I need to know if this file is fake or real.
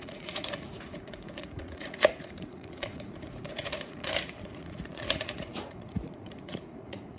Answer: fake